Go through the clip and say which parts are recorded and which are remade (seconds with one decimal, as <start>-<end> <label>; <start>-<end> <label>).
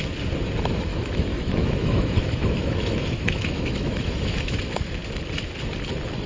0.0-0.9 recorded; 0.9-4.6 remade; 4.6-6.3 recorded